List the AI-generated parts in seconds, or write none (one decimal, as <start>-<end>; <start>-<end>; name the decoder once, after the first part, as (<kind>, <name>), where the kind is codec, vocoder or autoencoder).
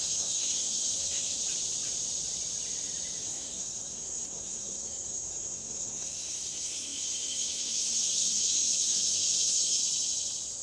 0.0-1.4 (codec, SNAC); 3.2-9.8